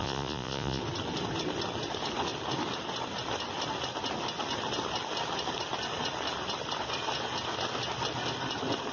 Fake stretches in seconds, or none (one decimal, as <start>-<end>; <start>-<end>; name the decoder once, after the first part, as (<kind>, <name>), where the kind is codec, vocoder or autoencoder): 0.0-0.8 (vocoder, Vocos)